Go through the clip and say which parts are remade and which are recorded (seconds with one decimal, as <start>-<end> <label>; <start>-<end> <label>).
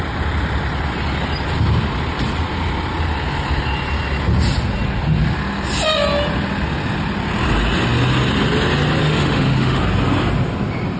0.0-9.0 recorded; 9.0-9.8 remade; 9.8-11.0 recorded